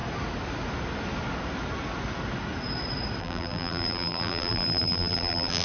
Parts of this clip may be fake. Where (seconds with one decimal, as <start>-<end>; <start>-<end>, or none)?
3.2-5.6